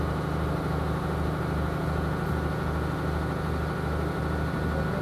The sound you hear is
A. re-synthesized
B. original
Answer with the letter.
B